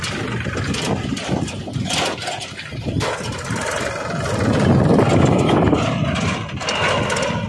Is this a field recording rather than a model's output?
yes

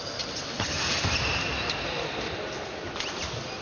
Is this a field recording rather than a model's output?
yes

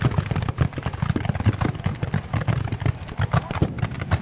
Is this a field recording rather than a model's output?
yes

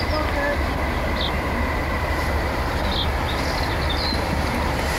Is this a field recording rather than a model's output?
yes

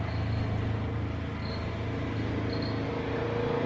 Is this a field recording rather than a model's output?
yes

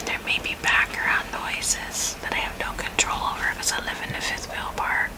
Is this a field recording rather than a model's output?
yes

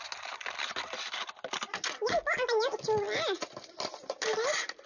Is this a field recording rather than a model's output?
yes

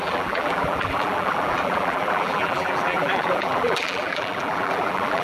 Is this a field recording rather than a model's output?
no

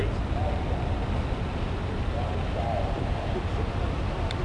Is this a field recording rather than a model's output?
yes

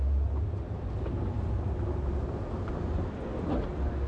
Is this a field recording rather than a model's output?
yes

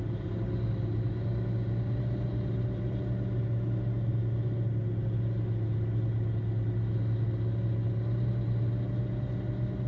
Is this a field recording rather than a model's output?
yes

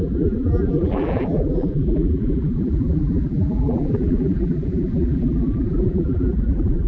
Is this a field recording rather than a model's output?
no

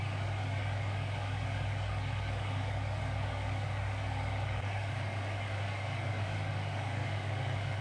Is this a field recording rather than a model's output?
no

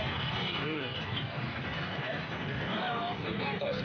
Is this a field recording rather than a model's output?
no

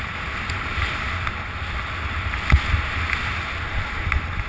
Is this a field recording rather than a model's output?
yes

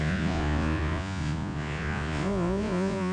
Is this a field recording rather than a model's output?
no